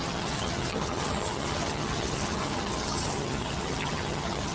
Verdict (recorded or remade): remade